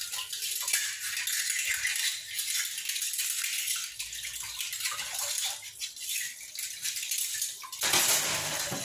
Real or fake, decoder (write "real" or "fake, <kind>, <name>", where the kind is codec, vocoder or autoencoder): real